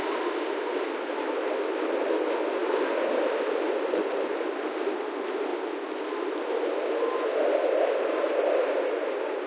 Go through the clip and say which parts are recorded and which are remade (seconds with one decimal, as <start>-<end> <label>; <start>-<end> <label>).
0.0-9.5 recorded